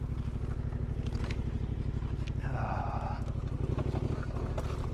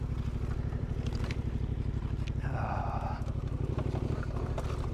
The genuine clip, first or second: first